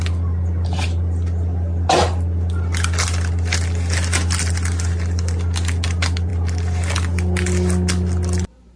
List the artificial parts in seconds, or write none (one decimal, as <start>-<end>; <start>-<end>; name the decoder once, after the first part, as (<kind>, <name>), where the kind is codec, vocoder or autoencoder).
none